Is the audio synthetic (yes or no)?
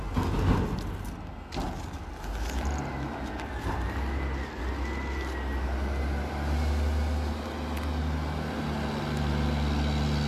no